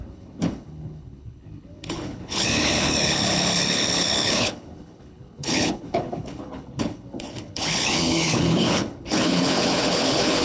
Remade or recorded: remade